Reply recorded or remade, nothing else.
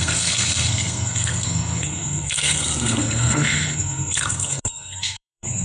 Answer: remade